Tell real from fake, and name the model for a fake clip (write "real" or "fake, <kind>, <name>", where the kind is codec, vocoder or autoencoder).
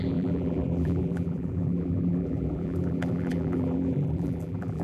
fake, vocoder, BigVGAN v2